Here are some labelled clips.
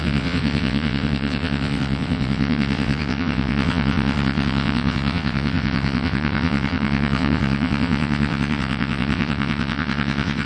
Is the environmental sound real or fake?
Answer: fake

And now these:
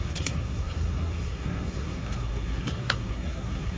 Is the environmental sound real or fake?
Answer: fake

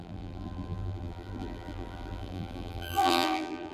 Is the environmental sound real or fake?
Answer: fake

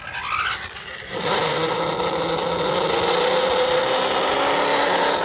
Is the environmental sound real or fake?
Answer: real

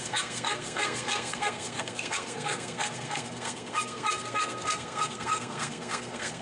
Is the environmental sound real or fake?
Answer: fake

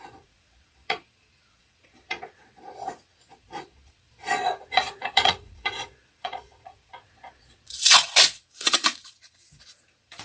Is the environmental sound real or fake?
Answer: fake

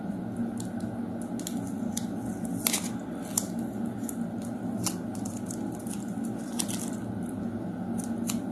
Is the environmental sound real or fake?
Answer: real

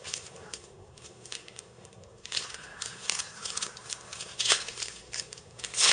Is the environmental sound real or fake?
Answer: fake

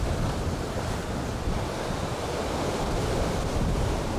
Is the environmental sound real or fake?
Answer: real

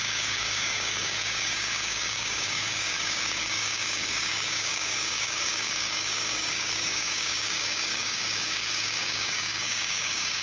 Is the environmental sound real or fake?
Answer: fake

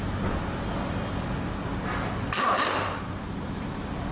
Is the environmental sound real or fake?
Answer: real